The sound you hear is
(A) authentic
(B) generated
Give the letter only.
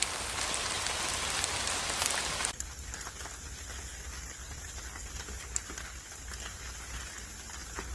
A